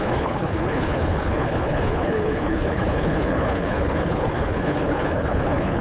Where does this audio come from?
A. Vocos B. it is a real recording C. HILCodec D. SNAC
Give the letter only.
C